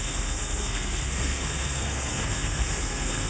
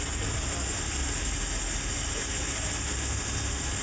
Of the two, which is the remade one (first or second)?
first